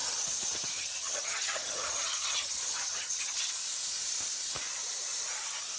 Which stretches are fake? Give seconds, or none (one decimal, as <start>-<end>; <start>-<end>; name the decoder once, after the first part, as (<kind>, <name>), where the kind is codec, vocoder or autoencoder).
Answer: 0.0-3.5 (vocoder, HiFi-GAN)